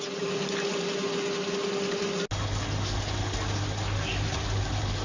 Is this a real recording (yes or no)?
yes